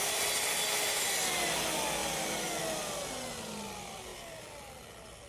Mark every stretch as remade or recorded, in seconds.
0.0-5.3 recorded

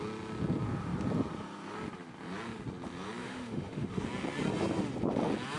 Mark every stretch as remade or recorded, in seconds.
0.0-3.2 recorded; 3.2-4.0 remade; 4.0-5.6 recorded

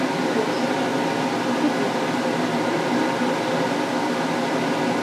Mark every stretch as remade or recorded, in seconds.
0.0-5.0 recorded